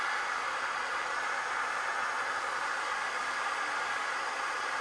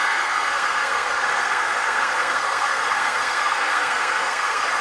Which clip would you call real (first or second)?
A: first